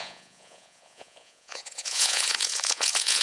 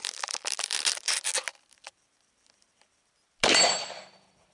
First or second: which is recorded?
second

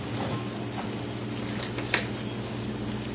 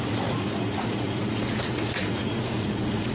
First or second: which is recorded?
first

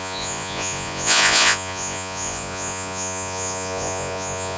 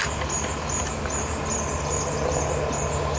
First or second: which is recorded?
second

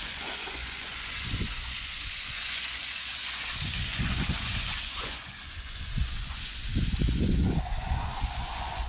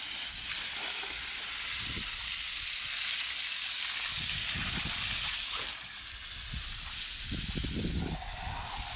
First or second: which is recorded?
second